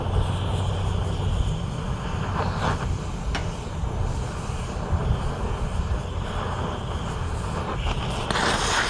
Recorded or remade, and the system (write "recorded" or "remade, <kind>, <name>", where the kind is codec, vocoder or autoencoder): recorded